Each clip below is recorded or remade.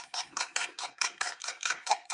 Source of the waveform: remade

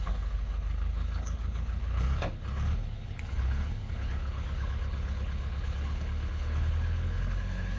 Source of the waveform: remade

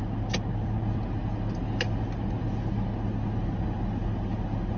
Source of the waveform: recorded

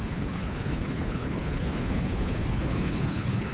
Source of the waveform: remade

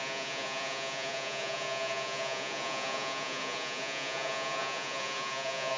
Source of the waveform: remade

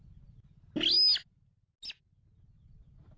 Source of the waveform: recorded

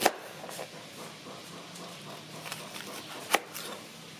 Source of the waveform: recorded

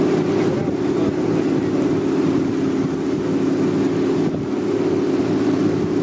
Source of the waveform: recorded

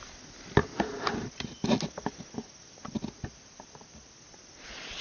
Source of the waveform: recorded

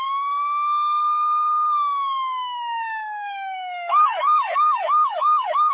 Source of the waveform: remade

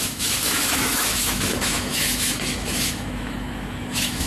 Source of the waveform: remade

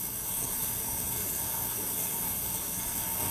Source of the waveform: remade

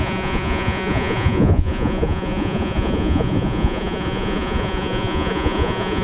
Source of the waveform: remade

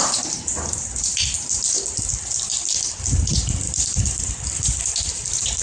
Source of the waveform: recorded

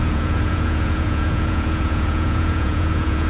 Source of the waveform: remade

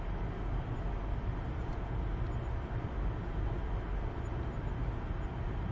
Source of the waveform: recorded